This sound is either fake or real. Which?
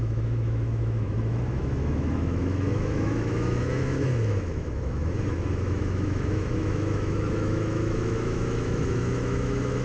fake